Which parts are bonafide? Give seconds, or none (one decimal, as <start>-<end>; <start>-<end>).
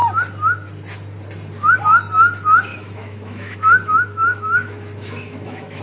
0.0-2.7